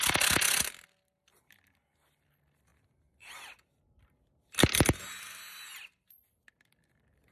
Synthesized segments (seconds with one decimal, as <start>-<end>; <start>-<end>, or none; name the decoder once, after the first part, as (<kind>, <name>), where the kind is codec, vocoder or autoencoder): none